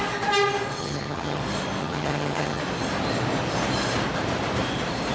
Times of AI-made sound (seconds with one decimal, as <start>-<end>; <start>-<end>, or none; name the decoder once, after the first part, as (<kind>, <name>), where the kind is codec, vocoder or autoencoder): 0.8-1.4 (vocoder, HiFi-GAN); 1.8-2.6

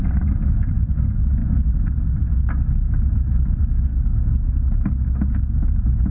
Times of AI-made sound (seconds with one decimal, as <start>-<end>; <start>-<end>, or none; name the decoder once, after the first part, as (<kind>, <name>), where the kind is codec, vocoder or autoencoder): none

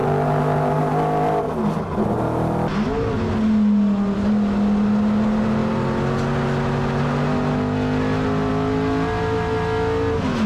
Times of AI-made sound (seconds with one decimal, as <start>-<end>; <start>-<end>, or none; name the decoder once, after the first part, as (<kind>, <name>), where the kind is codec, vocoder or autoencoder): none